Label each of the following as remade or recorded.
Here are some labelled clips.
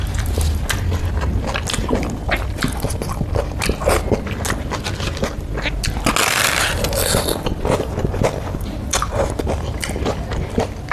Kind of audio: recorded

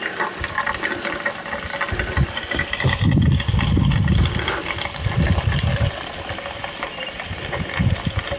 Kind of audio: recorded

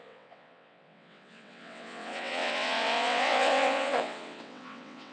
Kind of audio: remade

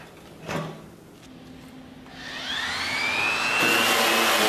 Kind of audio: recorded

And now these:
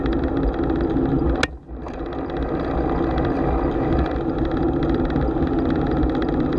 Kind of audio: recorded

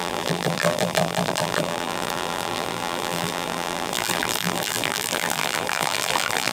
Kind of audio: remade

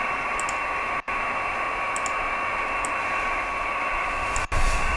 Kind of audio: recorded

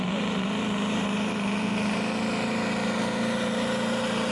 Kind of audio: recorded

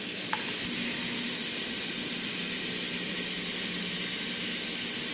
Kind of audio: recorded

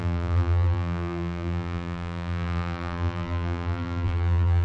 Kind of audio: remade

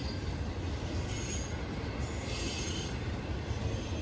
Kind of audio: recorded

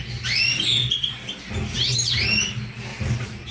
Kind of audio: recorded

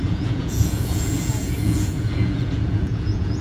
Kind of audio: remade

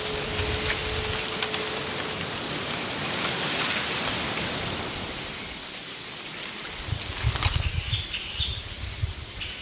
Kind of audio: recorded